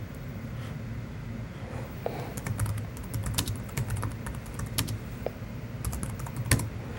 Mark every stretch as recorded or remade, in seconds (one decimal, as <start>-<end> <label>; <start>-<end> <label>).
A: 0.0-3.2 recorded; 3.2-4.1 remade; 4.1-7.0 recorded